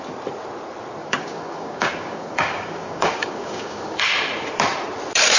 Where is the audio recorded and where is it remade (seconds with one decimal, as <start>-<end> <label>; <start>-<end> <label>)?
0.0-1.0 recorded; 1.0-4.0 remade; 4.0-5.4 recorded